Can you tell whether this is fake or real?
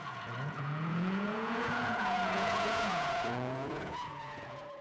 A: fake